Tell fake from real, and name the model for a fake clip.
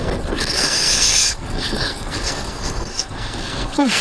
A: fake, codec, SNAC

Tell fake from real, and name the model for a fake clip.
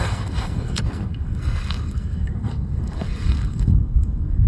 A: fake, codec, SNAC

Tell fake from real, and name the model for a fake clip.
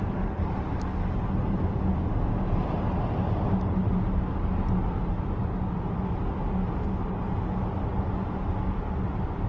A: real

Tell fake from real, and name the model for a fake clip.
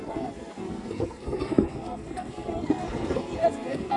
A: fake, codec, SNAC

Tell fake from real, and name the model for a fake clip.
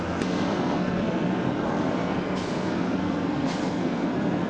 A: fake, codec, SNAC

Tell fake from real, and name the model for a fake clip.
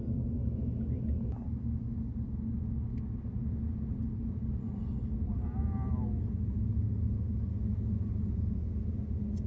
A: real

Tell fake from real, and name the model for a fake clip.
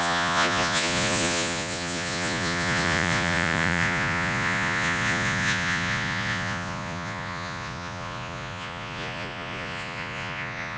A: fake, vocoder, Vocos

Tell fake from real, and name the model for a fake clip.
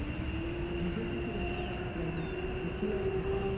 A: real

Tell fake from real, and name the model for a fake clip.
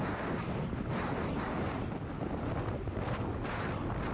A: real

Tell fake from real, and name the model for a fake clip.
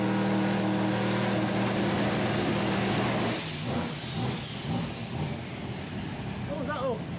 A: real